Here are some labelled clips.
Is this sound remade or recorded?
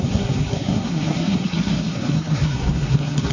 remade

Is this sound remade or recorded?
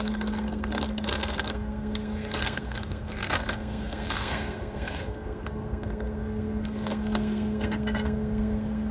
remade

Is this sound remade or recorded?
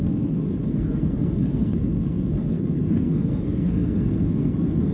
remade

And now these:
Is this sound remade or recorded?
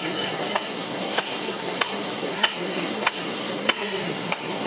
remade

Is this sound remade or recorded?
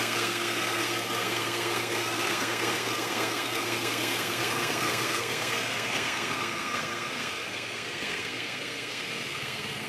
remade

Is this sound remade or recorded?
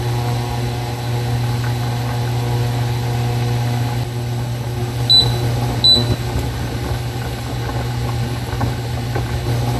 recorded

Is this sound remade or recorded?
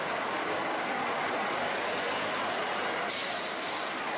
recorded